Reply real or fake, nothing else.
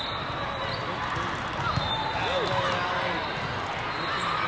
real